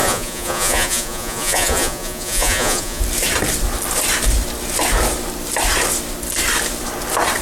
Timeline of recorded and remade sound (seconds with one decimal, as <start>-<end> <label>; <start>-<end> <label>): 0.0-3.0 remade; 3.0-7.4 recorded